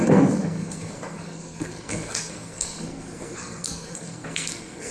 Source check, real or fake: fake